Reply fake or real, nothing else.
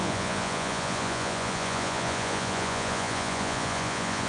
fake